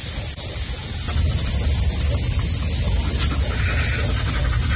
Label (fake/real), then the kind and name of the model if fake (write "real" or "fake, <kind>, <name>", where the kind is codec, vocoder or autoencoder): real